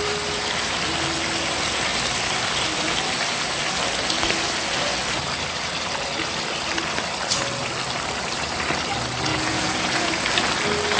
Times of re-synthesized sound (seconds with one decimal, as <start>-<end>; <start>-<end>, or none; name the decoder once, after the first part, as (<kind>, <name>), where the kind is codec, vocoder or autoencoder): 9.3-10.2 (vocoder, Vocos)